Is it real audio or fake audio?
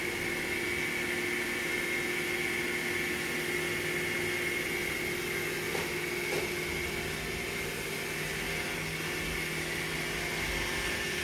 real